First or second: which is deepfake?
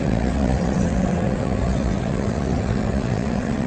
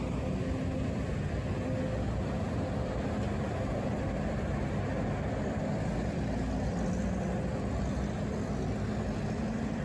first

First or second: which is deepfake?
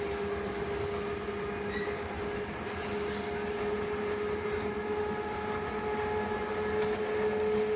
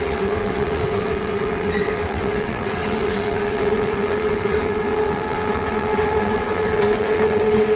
second